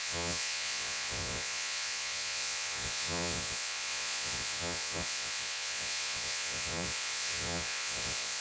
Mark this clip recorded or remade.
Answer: remade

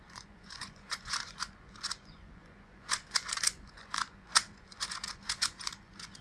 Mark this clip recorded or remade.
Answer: remade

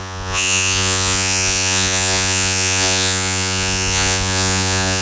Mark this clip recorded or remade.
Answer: remade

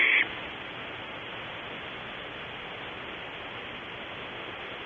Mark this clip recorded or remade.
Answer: recorded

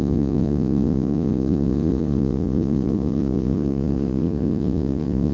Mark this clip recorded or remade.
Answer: remade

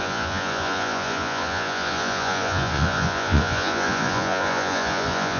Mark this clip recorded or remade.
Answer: remade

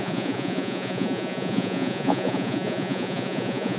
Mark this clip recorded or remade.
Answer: remade